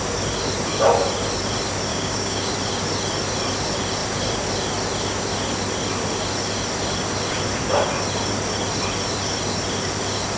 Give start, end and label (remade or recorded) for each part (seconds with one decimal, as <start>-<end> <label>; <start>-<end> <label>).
0.0-1.9 recorded; 1.9-2.5 remade; 2.5-10.4 recorded